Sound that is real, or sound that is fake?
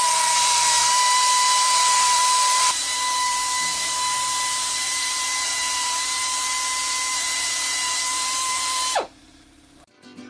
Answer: fake